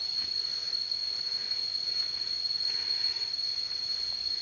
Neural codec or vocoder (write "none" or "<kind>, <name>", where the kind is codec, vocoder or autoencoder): none